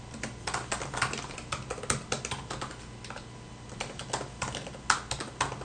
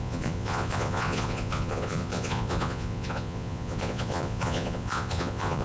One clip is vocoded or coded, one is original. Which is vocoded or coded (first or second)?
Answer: second